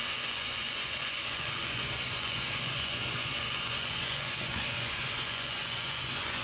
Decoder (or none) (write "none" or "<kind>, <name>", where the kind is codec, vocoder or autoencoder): vocoder, Vocos